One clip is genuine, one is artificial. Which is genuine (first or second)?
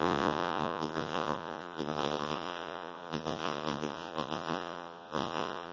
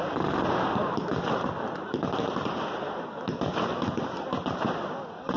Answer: second